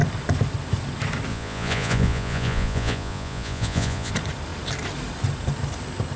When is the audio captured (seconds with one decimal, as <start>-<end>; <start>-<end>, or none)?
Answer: 0.0-1.3; 4.1-6.2